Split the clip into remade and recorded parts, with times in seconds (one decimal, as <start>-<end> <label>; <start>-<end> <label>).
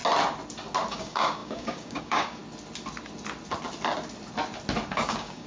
0.0-0.9 recorded; 0.9-2.4 remade; 2.4-4.9 recorded; 4.9-5.5 remade